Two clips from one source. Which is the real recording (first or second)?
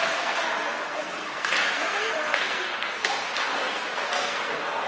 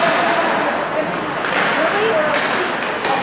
second